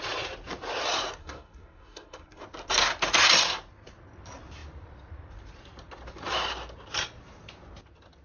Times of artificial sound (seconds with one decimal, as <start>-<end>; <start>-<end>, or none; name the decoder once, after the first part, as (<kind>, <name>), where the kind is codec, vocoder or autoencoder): 1.2-2.4 (codec, SNAC)